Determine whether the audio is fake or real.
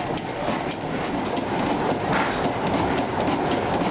real